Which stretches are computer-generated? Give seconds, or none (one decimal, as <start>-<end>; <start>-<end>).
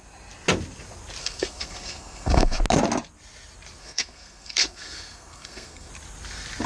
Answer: 1.2-2.6; 3.8-5.9